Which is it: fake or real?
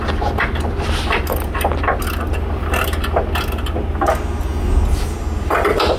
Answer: real